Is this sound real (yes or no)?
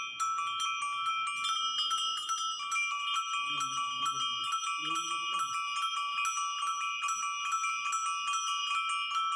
yes